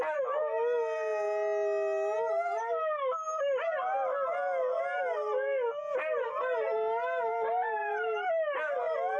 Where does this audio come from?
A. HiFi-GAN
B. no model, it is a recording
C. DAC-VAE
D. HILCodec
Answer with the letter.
B